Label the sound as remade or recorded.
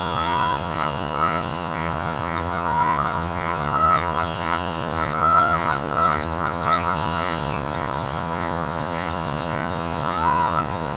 remade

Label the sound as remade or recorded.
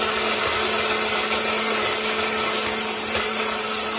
recorded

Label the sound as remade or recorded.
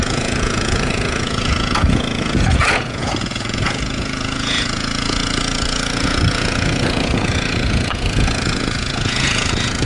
remade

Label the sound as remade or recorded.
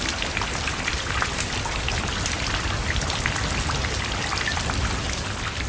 recorded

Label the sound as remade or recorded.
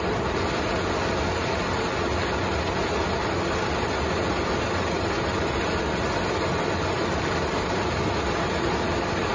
recorded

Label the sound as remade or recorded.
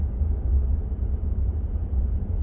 remade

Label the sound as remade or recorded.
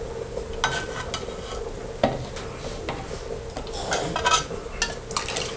recorded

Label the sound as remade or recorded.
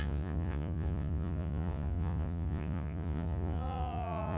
remade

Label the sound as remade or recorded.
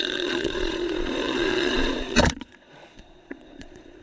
remade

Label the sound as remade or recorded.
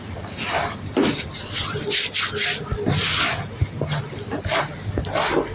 recorded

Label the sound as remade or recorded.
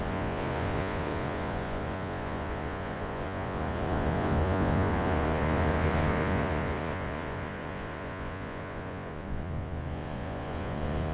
remade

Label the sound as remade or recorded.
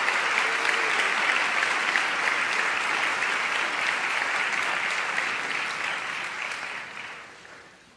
recorded